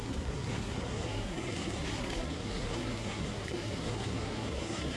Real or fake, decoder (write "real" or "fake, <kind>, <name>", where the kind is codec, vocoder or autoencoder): fake, codec, SNAC